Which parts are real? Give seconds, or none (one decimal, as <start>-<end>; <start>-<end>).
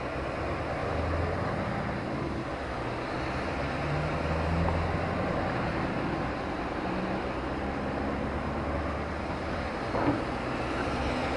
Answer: 0.0-11.4